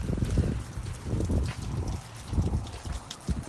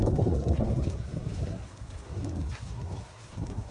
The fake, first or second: second